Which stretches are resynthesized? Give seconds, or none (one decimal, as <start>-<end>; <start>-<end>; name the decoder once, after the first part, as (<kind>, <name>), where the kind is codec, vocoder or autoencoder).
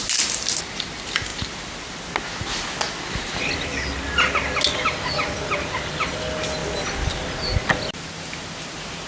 none